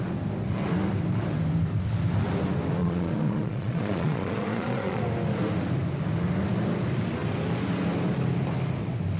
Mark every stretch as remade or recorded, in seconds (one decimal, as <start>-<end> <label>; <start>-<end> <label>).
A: 0.0-2.8 recorded; 2.8-5.0 remade; 5.0-9.2 recorded